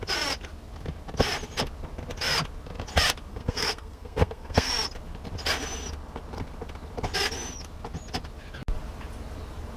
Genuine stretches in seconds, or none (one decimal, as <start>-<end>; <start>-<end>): 0.0-3.3; 4.7-9.8